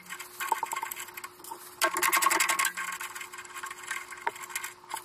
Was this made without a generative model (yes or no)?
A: yes